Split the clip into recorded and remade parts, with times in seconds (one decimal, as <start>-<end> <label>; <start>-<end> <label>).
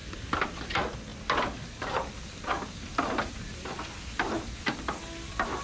0.0-5.6 recorded